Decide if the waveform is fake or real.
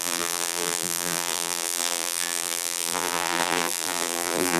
fake